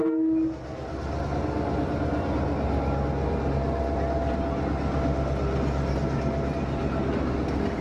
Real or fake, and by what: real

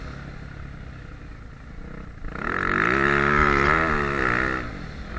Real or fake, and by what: real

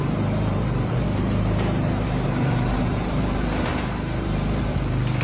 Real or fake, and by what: fake, vocoder, BigVGAN v2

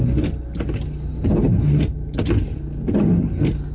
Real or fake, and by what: real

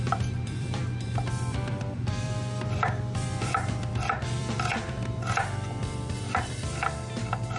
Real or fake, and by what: fake, vocoder, BigVGAN v2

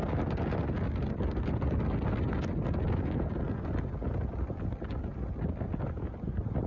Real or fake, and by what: real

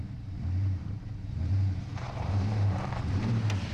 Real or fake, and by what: fake, vocoder, BigVGAN v2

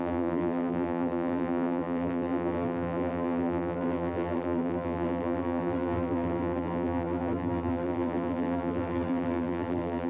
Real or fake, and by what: fake, vocoder, BigVGAN v2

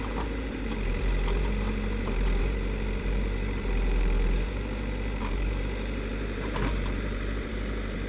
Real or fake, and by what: fake, vocoder, BigVGAN v2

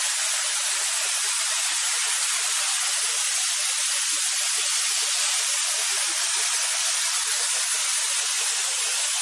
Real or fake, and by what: fake, vocoder, BigVGAN v2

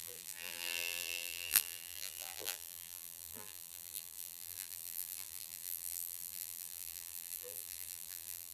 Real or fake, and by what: fake, vocoder, BigVGAN v2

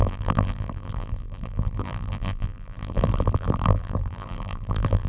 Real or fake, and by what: fake, vocoder, BigVGAN v2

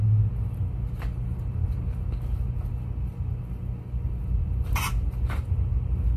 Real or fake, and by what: real